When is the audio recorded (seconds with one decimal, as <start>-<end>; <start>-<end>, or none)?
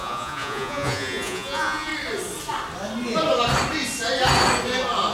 1.9-5.1